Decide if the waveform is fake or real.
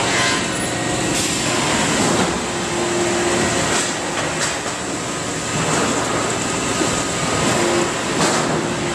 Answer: real